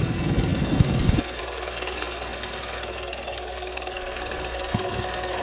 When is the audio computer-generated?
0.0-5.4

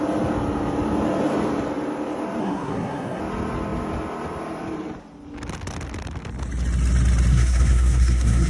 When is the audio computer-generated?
2.4-3.2; 7.3-8.5

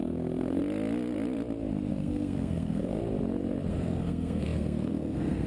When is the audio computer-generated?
0.0-0.6; 1.9-3.0; 3.7-5.5

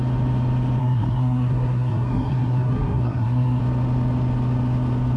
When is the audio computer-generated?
0.8-3.6

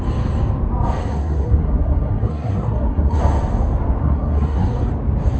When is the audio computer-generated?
1.0-3.2; 4.0-4.9

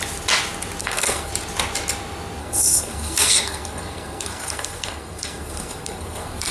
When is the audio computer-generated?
0.8-1.3; 2.4-6.5

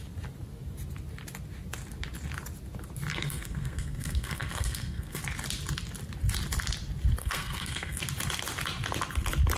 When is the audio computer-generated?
3.1-5.2; 7.2-8.0

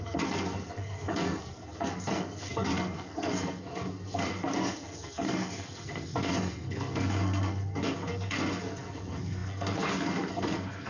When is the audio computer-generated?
0.0-10.9